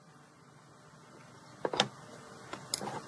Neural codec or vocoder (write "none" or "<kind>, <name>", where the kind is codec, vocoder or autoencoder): none